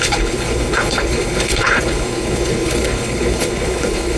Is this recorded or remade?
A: remade